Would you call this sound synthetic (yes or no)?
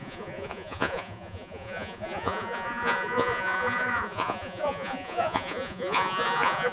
yes